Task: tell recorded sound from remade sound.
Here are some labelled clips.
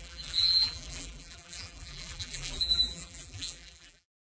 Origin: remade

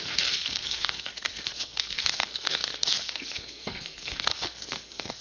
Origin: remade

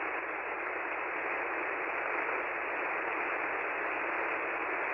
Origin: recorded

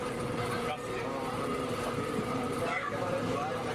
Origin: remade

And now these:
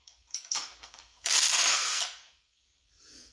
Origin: remade